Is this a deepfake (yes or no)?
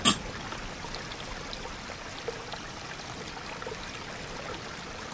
no